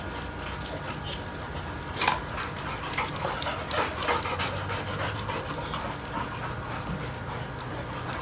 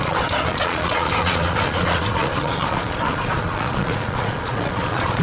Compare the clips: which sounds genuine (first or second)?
first